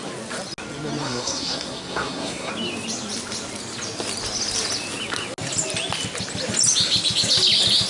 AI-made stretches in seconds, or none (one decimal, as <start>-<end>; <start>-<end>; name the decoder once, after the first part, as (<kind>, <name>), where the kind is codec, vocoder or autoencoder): 1.0-2.5 (codec, SNAC)